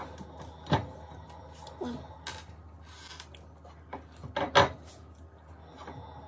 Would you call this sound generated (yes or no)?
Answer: no